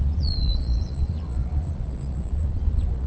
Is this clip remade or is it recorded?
remade